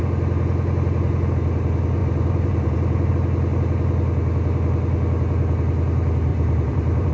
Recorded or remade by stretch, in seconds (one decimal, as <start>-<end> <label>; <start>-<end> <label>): 0.0-2.0 recorded; 2.0-3.1 remade; 3.1-6.3 recorded; 6.3-7.1 remade